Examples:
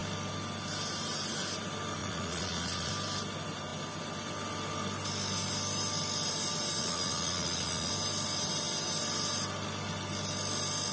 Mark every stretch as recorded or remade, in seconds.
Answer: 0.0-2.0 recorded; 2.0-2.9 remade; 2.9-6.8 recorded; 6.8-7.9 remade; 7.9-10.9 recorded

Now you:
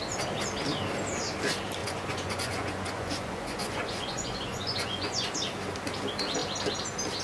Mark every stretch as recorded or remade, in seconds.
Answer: 0.0-1.8 recorded; 1.8-5.3 remade; 5.3-7.2 recorded

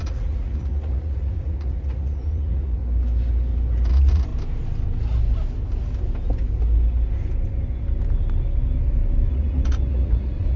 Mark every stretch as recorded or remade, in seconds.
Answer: 0.0-2.8 remade; 2.8-3.9 recorded; 3.9-4.3 remade; 4.3-9.3 recorded; 9.3-10.6 remade